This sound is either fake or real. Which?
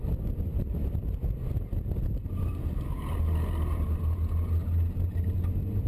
real